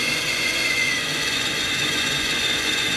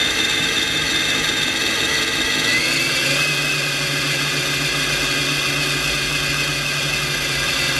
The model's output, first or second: first